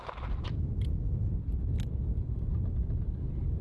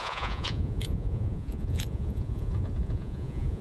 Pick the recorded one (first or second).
first